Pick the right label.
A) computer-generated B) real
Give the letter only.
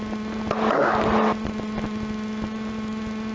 B